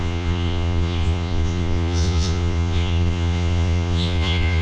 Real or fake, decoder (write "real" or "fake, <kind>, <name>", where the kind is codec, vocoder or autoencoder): fake, vocoder, Vocos